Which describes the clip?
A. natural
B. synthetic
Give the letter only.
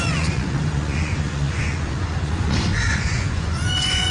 B